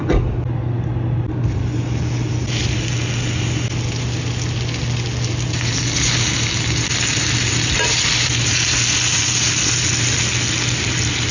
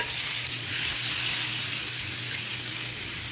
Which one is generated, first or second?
second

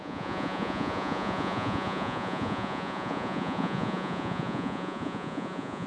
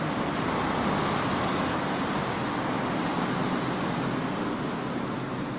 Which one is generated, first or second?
first